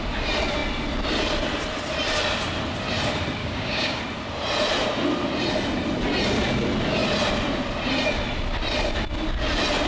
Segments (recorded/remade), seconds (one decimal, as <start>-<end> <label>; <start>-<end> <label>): 0.0-3.4 recorded; 3.4-4.0 remade; 4.0-9.9 recorded